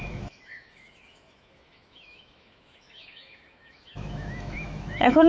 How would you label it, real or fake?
fake